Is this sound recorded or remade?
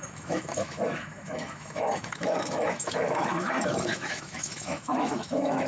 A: remade